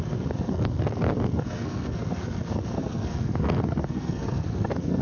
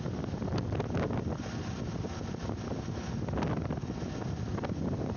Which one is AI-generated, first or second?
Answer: first